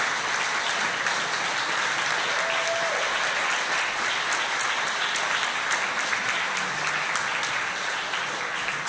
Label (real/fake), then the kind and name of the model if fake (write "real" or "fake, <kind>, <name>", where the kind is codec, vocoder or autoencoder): real